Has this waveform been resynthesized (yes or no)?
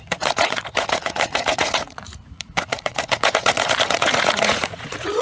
yes